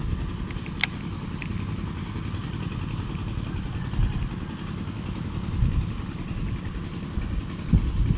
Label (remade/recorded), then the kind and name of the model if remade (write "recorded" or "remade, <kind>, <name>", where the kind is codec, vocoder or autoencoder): recorded